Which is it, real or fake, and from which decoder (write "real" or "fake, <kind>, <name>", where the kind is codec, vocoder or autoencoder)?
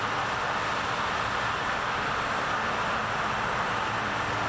real